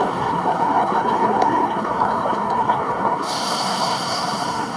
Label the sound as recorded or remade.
remade